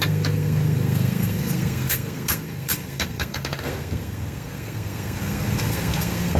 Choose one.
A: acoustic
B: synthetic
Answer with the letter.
B